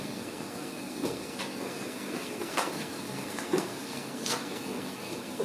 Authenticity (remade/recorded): remade